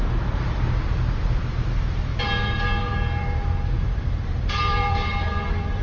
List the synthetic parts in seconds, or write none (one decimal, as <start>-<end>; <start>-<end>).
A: 0.0-0.6; 2.1-5.8